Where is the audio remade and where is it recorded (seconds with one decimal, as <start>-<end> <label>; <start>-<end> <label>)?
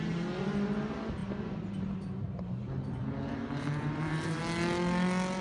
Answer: 0.0-1.2 recorded; 1.2-4.4 remade; 4.4-5.4 recorded